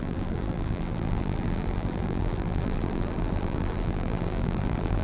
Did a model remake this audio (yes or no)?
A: yes